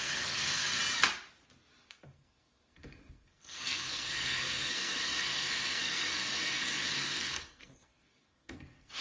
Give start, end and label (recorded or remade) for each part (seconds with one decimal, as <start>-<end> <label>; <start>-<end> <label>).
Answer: 0.0-0.8 remade; 0.8-1.9 recorded; 1.9-9.0 remade